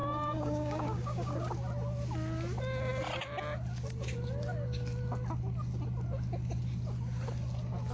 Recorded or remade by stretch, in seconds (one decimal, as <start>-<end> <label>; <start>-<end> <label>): 0.0-1.3 remade; 1.3-7.9 recorded